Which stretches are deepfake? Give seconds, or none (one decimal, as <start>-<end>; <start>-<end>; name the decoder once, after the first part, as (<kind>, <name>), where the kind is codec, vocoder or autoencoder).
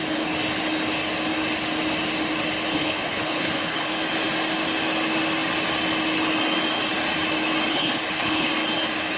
2.7-3.9 (codec, HILCodec); 7.7-8.5